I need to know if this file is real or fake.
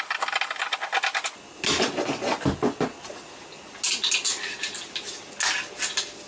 real